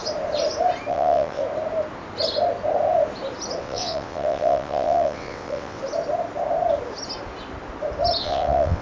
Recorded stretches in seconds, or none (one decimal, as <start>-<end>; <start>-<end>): 0.0-0.9; 1.4-3.6; 5.8-8.2